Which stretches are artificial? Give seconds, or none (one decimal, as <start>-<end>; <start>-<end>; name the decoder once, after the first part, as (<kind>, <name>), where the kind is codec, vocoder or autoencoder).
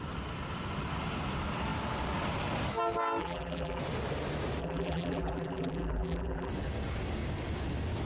3.2-3.8 (vocoder, BigVGAN v2); 4.6-6.5